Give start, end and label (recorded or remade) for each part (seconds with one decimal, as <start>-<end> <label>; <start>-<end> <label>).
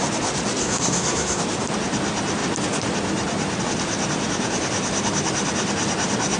0.0-0.6 recorded; 0.6-1.4 remade; 1.4-6.4 recorded